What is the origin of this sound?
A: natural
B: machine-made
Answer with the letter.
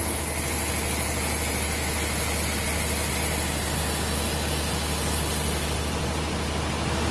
A